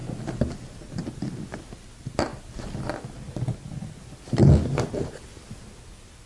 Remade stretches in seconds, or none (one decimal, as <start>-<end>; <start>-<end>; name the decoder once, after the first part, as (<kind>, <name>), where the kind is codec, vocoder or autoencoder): none